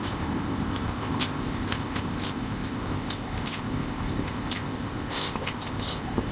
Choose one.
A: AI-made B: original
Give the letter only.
A